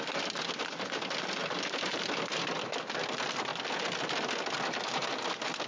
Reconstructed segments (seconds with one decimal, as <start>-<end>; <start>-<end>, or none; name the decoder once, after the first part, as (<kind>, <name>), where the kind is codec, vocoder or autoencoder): none